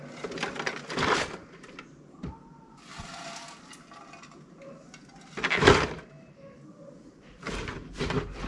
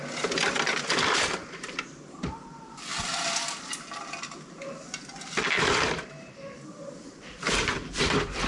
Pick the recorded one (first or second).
first